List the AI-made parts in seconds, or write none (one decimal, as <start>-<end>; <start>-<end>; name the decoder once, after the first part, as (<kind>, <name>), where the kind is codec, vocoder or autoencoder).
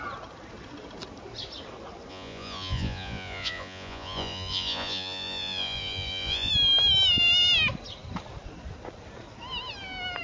2.1-6.5 (vocoder, Vocos)